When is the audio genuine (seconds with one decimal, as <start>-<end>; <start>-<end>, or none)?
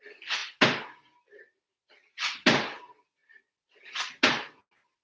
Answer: 0.0-5.0